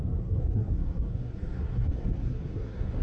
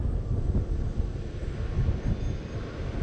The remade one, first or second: first